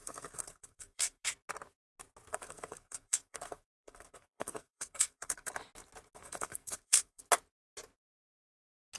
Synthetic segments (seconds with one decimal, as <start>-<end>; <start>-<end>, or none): 0.0-1.2; 2.3-5.5; 6.2-7.2